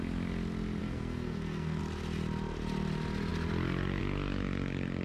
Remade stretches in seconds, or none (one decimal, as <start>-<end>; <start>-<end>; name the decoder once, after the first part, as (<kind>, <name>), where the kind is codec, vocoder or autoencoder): 0.8-1.8 (codec, SNAC)